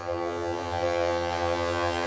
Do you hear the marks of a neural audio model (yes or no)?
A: yes